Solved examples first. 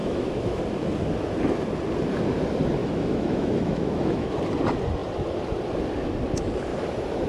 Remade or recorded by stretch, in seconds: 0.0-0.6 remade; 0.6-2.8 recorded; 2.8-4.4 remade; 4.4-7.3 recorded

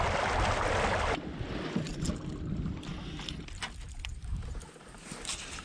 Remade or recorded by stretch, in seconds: 0.0-4.1 recorded; 4.1-5.0 remade; 5.0-5.6 recorded

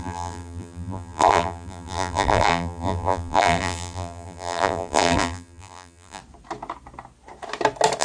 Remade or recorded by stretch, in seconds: 0.0-6.2 remade; 6.2-8.0 recorded

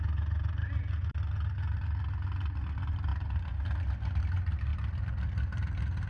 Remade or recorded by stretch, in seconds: 0.0-6.1 recorded